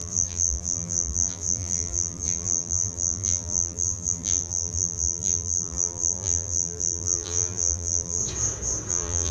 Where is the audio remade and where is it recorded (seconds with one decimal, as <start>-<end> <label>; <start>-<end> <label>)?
0.0-8.2 remade; 8.2-8.9 recorded; 8.9-9.3 remade